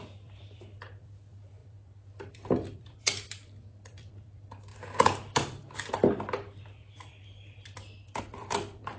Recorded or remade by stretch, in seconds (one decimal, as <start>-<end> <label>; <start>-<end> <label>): 0.0-9.0 remade